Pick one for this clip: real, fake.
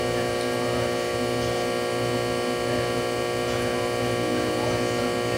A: real